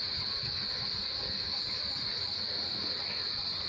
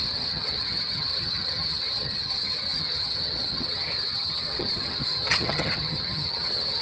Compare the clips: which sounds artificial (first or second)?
second